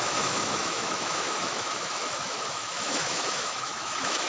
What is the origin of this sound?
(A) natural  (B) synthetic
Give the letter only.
B